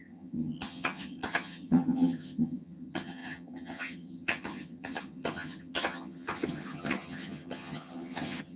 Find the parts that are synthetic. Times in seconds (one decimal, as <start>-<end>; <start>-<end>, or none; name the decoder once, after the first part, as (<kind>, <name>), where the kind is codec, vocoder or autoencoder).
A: 0.0-8.6 (vocoder, HiFi-GAN)